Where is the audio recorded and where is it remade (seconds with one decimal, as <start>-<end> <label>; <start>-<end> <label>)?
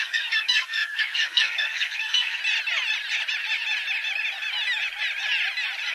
0.0-2.4 remade; 2.4-5.9 recorded